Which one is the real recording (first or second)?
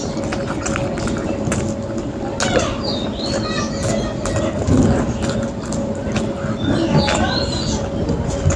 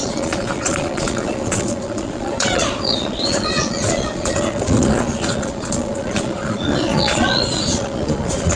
first